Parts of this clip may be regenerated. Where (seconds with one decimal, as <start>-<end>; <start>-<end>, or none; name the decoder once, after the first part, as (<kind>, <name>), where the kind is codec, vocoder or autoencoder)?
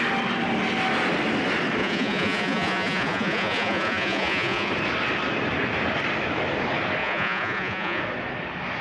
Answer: 1.8-4.7 (vocoder, Vocos); 7.0-8.0